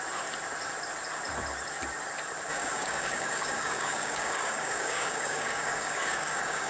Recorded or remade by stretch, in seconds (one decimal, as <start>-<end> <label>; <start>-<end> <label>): 0.0-2.5 recorded; 2.5-6.7 remade